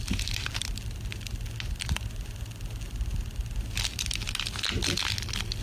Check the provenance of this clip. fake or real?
real